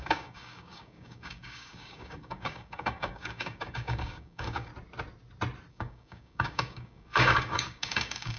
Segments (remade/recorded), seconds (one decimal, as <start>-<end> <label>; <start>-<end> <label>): 0.0-4.7 remade; 4.7-5.7 recorded; 5.7-8.4 remade